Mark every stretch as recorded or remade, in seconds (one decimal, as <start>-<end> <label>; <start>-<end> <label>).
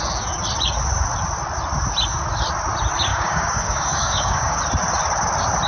0.0-3.1 recorded; 3.1-4.6 remade; 4.6-5.7 recorded